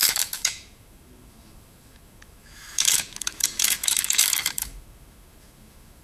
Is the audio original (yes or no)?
no